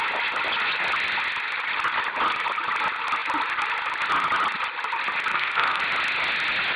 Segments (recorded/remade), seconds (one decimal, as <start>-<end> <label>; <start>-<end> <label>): 0.0-5.3 recorded; 5.3-5.8 remade; 5.8-6.8 recorded